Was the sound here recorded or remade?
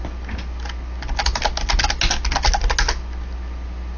recorded